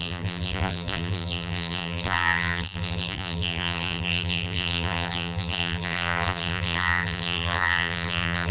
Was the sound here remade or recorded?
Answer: remade